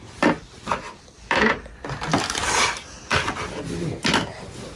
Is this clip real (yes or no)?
yes